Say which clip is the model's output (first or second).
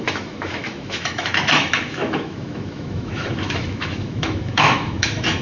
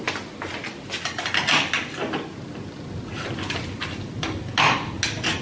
first